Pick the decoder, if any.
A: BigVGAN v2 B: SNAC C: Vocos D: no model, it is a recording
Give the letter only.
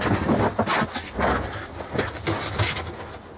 D